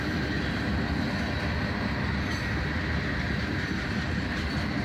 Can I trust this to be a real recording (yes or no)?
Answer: yes